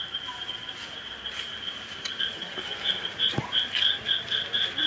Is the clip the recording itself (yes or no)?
yes